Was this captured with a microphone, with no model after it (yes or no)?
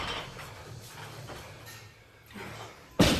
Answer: yes